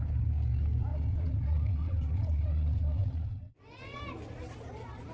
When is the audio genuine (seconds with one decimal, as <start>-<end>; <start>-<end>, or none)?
0.0-0.9; 4.0-5.1